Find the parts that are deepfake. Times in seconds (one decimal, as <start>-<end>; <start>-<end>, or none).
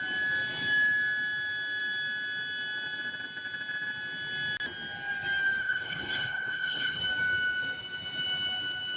5.6-7.0